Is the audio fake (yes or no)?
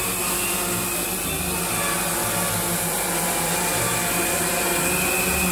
no